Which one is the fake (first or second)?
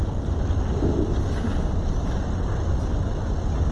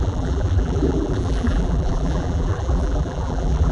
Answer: second